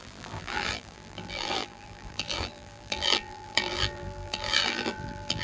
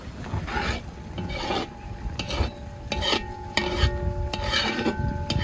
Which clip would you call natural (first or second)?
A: second